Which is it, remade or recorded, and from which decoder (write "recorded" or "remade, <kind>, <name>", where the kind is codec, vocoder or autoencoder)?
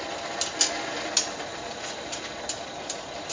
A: recorded